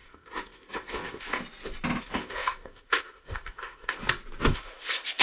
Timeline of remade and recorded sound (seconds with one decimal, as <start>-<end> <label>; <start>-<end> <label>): 0.0-1.4 remade; 1.4-2.0 recorded; 2.0-4.0 remade; 4.0-4.5 recorded; 4.5-5.2 remade